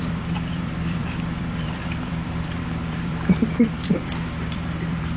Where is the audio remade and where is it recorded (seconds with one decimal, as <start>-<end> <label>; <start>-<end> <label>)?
0.0-5.2 remade